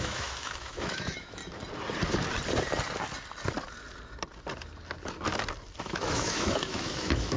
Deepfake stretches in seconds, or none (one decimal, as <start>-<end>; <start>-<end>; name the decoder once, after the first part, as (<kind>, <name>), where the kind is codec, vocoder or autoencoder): 0.0-1.4 (autoencoder, DAC-VAE); 5.8-7.4